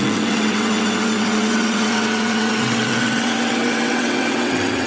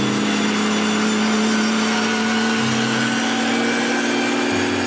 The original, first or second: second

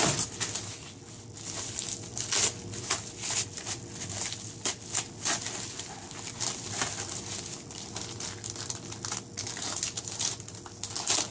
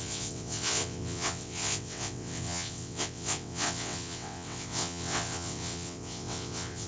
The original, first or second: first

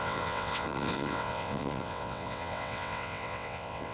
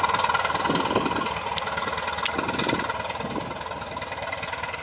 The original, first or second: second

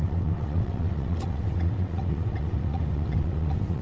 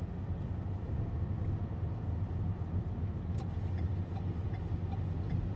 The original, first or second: second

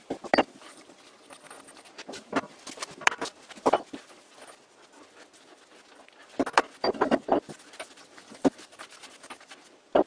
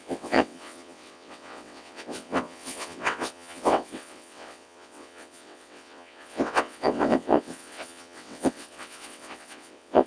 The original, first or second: first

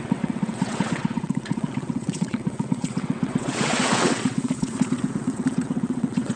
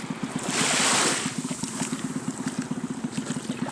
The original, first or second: second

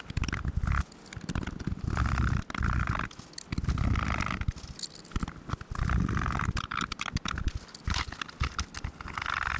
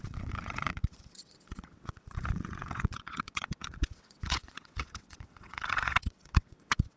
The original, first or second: first